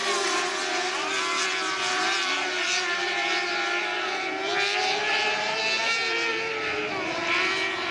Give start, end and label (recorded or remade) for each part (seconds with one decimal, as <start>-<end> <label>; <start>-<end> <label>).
0.0-7.9 remade